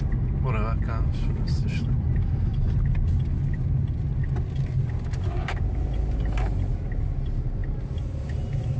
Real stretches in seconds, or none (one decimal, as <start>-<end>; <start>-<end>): 0.0-8.8